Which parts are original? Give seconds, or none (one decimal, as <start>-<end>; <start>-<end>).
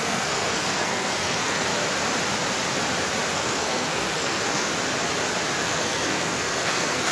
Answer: 1.7-3.3; 4.7-5.6